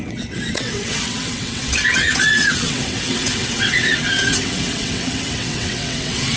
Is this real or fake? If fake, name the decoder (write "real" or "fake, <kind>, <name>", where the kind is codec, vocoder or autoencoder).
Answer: fake, vocoder, WaveNeXt